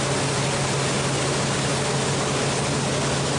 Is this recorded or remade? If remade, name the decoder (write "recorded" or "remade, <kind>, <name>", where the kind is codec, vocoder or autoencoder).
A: recorded